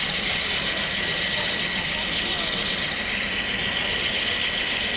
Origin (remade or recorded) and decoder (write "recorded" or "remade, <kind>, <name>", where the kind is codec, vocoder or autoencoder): recorded